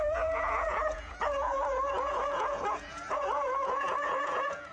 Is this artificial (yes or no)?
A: yes